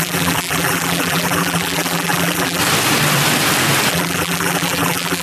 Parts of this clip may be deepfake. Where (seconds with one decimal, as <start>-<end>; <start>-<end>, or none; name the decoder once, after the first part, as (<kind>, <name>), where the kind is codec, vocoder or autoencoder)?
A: 0.0-2.6 (vocoder, BigVGAN v2); 3.9-5.2